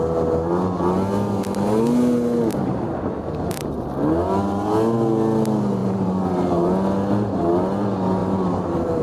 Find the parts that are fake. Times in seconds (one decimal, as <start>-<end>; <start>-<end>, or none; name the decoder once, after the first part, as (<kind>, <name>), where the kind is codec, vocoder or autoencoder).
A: 2.5-3.9 (vocoder, BigVGAN v2); 5.8-6.7; 8.2-9.0